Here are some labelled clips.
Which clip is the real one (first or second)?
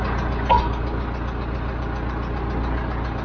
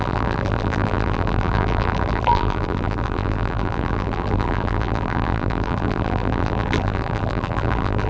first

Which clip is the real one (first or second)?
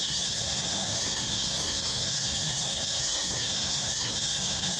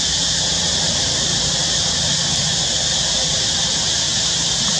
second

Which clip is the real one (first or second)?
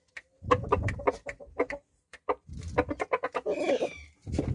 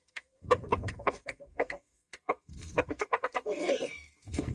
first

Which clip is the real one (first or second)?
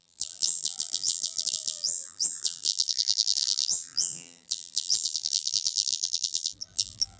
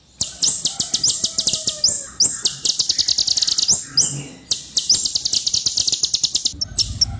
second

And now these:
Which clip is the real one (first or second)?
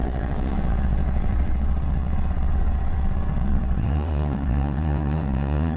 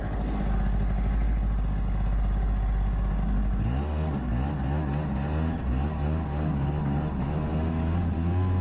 second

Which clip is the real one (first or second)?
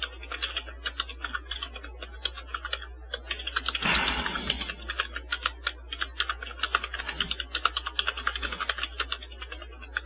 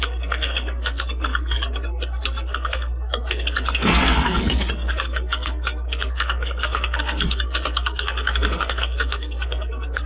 first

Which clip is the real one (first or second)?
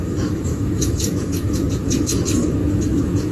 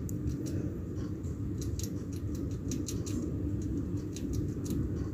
second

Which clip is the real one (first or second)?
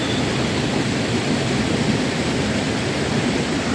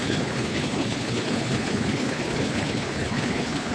first